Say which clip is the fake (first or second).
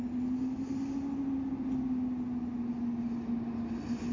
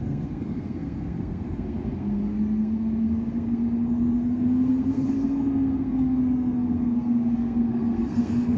second